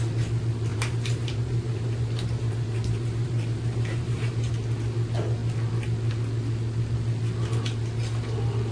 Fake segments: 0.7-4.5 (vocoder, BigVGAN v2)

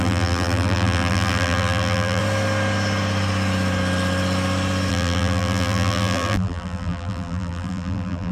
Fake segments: 0.0-2.2 (vocoder, BigVGAN v2); 4.9-8.3

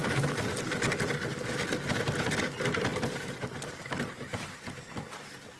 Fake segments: none

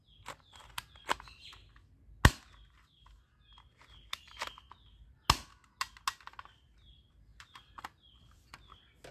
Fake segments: 7.3-8.5 (vocoder, BigVGAN v2)

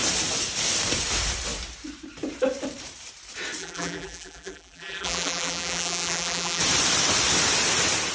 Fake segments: 3.6-6.6 (vocoder, BigVGAN v2)